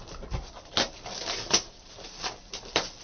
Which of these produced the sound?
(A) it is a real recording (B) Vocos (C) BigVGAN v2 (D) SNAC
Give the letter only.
A